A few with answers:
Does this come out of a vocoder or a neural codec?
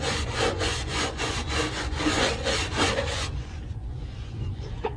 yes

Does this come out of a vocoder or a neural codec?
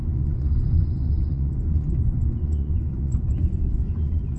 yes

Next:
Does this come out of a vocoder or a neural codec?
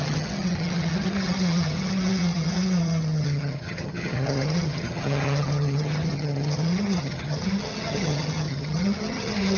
yes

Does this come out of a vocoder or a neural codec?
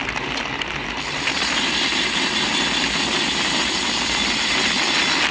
no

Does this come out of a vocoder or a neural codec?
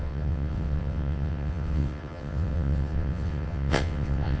yes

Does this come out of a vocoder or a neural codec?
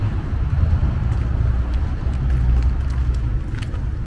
no